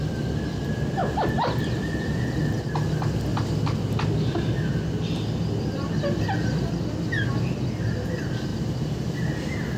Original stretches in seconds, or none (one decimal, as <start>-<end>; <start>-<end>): 0.0-1.0; 2.2-8.5